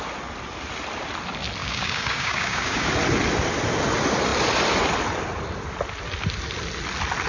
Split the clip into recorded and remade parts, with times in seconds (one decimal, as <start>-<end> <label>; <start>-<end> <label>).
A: 0.0-1.6 recorded; 1.6-2.9 remade; 2.9-7.3 recorded